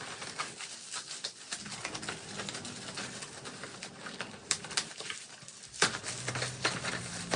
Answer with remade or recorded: recorded